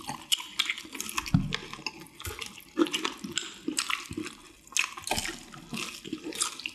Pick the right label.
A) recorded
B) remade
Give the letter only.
A